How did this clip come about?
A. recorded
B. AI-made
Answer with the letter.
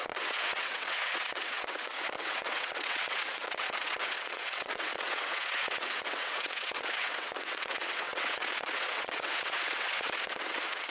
B